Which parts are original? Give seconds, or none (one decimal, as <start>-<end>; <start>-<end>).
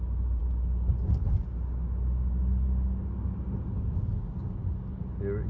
0.0-5.5